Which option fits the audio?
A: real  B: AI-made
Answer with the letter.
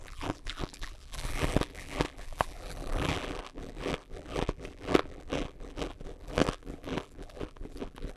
B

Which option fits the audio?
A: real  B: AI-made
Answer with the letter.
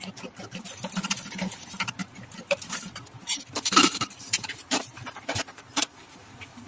B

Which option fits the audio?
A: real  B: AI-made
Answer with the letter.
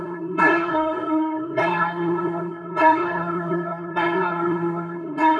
B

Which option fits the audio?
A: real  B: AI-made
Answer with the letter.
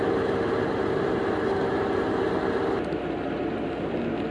A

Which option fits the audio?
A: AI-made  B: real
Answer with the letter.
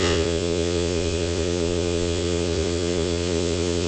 A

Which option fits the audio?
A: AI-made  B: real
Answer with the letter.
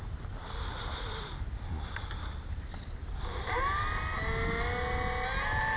B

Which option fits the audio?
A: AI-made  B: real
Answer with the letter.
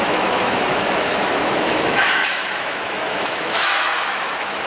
A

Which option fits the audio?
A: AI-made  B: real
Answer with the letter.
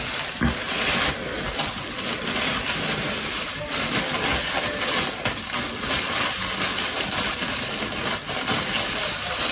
B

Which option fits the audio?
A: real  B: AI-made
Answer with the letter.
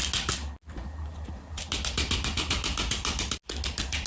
A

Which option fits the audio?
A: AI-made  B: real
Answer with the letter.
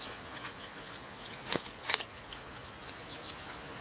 A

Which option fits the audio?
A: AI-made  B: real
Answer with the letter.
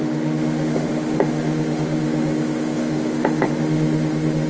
A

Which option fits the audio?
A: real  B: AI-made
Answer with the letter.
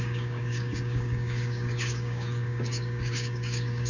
B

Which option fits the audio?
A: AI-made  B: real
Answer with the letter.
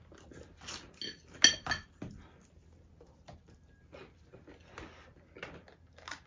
B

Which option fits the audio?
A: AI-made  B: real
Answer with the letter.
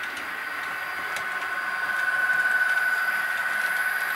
B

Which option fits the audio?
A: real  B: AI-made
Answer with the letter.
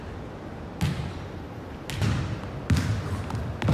A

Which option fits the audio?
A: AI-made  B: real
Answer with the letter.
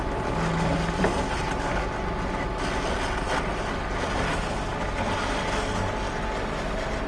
B